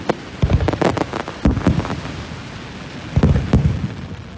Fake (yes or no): no